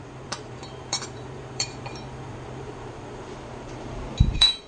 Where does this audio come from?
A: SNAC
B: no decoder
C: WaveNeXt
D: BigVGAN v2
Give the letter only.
D